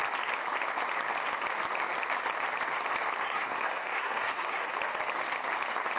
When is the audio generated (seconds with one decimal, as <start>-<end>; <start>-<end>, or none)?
3.2-4.7